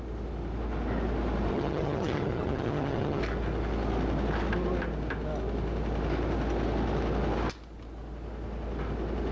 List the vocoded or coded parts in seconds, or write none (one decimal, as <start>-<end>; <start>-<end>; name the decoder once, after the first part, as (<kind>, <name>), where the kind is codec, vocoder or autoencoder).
1.5-3.2 (vocoder, HiFi-GAN)